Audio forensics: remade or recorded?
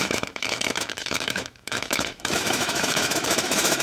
remade